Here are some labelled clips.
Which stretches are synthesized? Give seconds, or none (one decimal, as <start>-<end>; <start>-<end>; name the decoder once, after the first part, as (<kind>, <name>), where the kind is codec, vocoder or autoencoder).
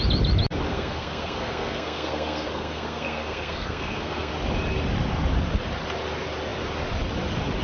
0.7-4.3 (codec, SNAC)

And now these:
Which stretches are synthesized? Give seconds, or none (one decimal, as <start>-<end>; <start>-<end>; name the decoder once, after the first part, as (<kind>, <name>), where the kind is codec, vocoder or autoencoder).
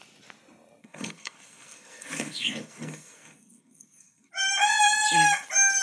0.8-4.3 (codec, SNAC)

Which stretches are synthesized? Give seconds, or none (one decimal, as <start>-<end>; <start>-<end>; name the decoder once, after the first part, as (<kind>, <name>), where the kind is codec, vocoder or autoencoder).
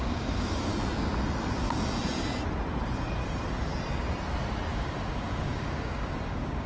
0.0-0.7 (codec, DAC); 4.7-6.7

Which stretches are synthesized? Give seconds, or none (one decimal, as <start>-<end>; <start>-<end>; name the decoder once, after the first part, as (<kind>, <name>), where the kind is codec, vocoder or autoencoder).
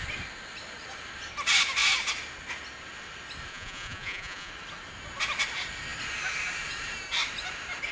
3.5-4.5 (vocoder, Vocos)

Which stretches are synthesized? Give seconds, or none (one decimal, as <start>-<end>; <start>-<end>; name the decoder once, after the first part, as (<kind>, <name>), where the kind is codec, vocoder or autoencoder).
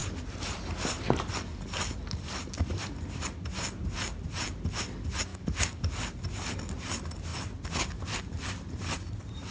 5.3-5.8 (codec, DAC)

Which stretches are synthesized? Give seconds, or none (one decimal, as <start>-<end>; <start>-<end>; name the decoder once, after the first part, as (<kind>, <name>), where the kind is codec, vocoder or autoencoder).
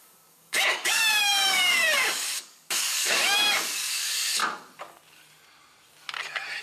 0.0-4.4 (codec, DAC)